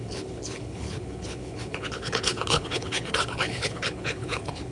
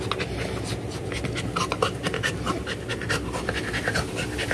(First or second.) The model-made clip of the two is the first